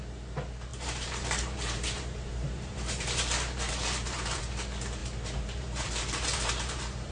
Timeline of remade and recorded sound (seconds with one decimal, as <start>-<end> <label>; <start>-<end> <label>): 0.0-0.7 recorded; 0.7-4.4 remade; 4.4-5.0 recorded; 5.0-7.1 remade